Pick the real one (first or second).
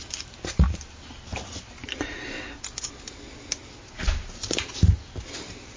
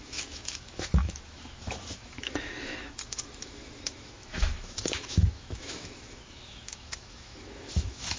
first